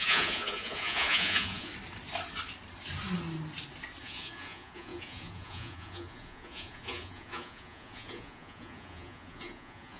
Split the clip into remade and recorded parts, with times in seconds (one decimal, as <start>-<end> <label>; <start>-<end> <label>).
0.0-1.7 remade; 1.7-4.0 recorded; 4.0-10.0 remade